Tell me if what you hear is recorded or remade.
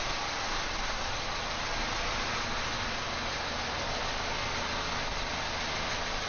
recorded